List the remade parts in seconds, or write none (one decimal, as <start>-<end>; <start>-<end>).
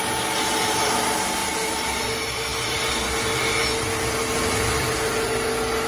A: 1.4-2.0